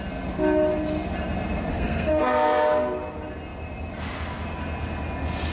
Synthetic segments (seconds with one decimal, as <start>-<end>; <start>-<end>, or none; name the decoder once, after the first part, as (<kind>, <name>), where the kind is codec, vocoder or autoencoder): 1.7-2.2 (codec, SNAC)